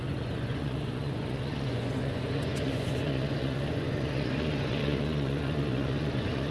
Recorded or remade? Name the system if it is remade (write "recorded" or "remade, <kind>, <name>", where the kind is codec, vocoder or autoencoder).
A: remade, vocoder, Vocos